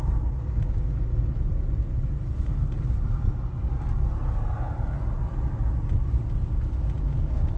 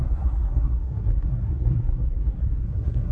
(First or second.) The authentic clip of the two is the first